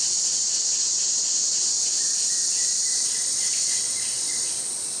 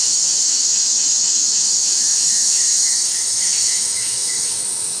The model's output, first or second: second